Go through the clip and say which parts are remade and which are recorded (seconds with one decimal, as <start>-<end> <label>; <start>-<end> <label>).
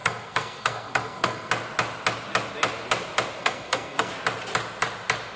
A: 0.0-1.5 remade; 1.5-3.4 recorded; 3.4-4.1 remade; 4.1-5.4 recorded